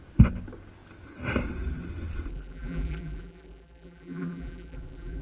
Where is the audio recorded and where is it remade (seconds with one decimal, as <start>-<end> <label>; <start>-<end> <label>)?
0.0-2.3 recorded; 2.3-5.2 remade